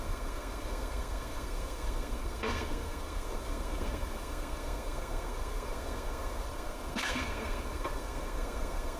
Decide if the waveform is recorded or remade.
remade